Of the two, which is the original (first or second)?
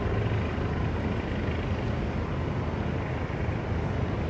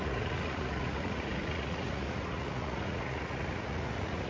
first